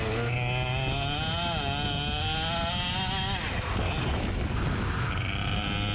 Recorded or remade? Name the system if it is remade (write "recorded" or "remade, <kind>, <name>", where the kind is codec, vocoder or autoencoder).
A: recorded